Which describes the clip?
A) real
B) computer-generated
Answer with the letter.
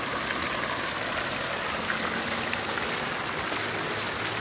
A